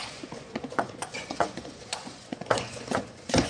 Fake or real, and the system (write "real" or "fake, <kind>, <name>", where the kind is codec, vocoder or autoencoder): fake, vocoder, Vocos